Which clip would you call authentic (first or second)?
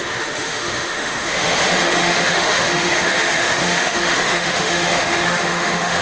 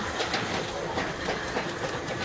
second